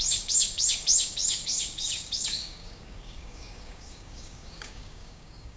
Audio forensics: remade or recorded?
remade